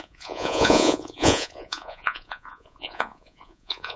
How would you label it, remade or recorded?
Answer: remade